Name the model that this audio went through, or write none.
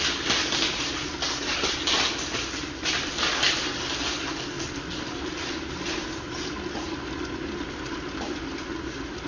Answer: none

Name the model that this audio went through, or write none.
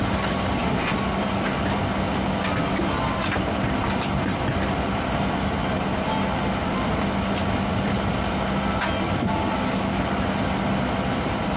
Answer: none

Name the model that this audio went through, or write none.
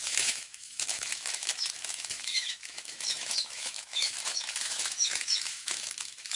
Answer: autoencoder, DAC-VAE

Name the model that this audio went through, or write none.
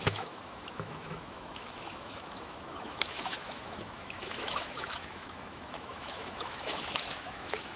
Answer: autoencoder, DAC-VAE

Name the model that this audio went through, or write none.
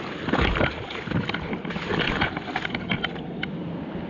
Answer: none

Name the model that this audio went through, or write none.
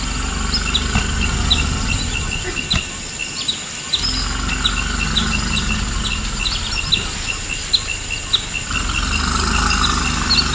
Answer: none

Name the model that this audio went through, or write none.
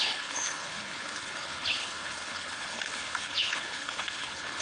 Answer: codec, HILCodec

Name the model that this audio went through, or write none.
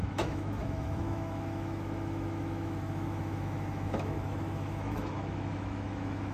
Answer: autoencoder, DAC-VAE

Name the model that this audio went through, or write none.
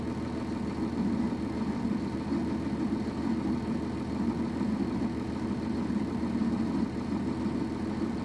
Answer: none